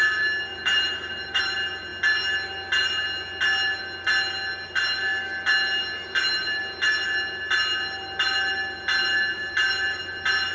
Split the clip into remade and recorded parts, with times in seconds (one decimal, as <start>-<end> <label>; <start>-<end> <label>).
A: 0.0-0.5 recorded; 0.5-1.4 remade; 1.4-10.5 recorded